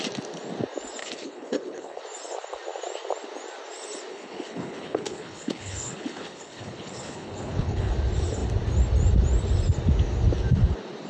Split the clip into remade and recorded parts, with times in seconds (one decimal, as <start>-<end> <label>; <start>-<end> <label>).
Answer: 0.0-1.0 recorded; 1.0-2.0 remade; 2.0-4.1 recorded; 4.1-7.9 remade; 7.9-11.1 recorded